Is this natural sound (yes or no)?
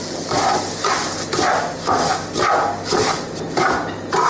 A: yes